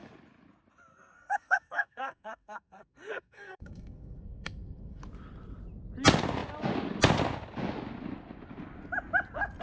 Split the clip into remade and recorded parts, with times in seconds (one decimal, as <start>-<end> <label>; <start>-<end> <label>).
0.0-0.9 recorded; 0.9-5.0 remade; 5.0-9.6 recorded

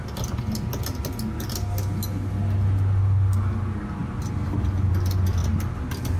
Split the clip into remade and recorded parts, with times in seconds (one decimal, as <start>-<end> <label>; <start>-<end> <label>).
0.0-6.2 recorded

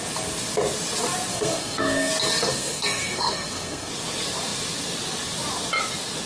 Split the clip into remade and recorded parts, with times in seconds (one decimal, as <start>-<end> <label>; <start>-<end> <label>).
0.0-1.3 recorded; 1.3-2.1 remade; 2.1-2.5 recorded; 2.5-3.9 remade; 3.9-6.3 recorded